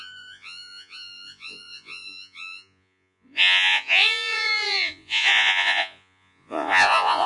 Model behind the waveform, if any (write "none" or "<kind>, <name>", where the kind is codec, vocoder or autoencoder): vocoder, Vocos